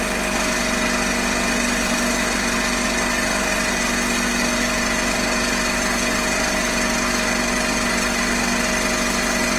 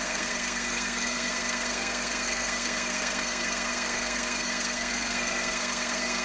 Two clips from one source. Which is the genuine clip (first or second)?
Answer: first